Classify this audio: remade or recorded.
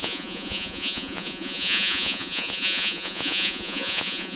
remade